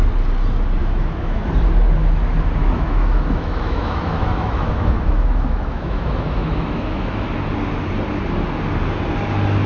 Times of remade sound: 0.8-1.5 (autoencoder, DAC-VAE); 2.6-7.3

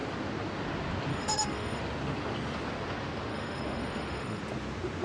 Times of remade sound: 1.1-1.8 (autoencoder, DAC-VAE); 3.3-4.4

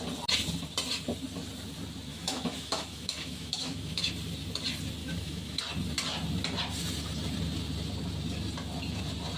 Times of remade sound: 2.1-4.1 (autoencoder, DAC-VAE); 5.0-5.6

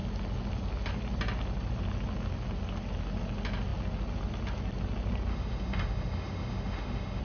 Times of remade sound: 5.3-7.2 (autoencoder, DAC-VAE)

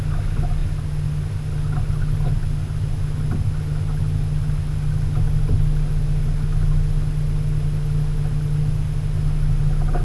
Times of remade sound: none